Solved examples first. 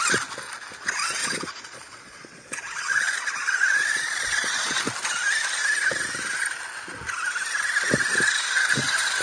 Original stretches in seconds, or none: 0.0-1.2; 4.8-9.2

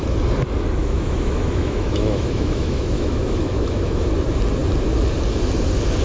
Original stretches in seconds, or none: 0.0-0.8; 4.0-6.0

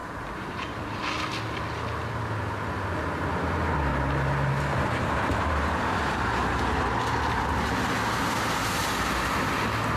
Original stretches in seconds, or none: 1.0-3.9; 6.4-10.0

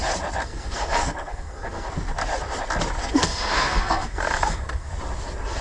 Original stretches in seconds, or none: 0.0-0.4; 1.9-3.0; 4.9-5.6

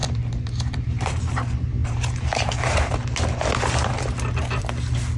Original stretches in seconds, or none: 1.3-1.8; 2.9-5.2